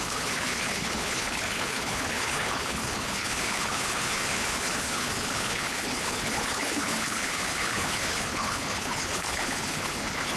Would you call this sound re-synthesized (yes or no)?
yes